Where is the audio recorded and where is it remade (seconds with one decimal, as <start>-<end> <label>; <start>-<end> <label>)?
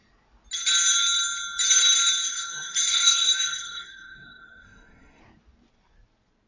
0.0-2.3 recorded; 2.3-5.2 remade; 5.2-6.5 recorded